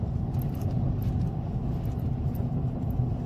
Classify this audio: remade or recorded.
recorded